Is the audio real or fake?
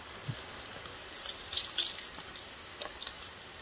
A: real